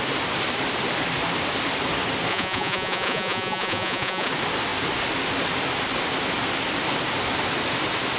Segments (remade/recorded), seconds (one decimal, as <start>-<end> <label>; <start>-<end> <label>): 0.0-2.3 recorded; 2.3-4.3 remade; 4.3-8.2 recorded